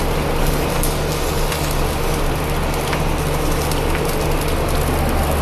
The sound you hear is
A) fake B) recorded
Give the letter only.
B